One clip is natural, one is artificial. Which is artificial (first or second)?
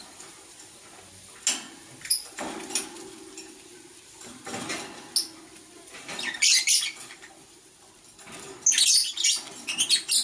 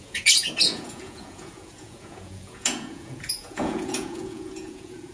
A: second